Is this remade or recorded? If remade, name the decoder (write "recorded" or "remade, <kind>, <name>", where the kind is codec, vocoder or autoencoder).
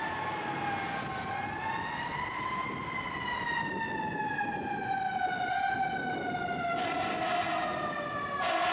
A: recorded